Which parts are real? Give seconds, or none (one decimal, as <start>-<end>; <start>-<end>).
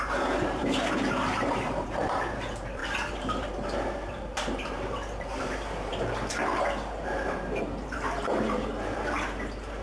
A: 5.9-7.0